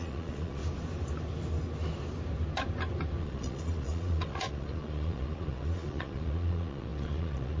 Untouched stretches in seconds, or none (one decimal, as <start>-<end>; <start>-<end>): 0.6-3.2